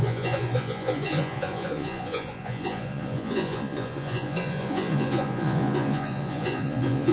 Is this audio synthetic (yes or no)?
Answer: yes